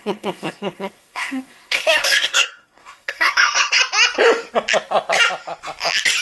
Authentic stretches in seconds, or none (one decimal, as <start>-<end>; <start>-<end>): 3.8-6.2